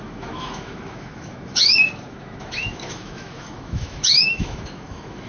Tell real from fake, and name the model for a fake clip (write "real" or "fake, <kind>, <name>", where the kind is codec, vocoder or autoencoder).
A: fake, autoencoder, DAC-VAE